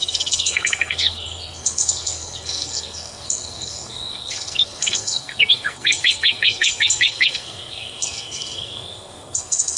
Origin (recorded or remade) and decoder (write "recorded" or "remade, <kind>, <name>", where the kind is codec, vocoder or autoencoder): remade, codec, SNAC